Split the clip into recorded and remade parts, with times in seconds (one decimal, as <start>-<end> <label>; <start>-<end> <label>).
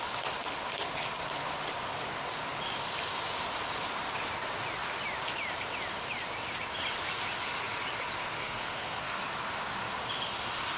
0.0-8.4 recorded; 8.4-9.2 remade; 9.2-10.8 recorded